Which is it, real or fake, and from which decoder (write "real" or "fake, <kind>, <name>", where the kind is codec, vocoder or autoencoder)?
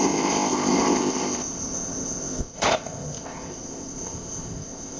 fake, codec, ZipCodec